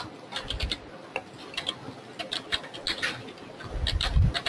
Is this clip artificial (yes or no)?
no